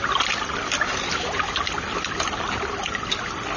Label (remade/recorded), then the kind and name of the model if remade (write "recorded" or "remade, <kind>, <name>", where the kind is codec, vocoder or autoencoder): recorded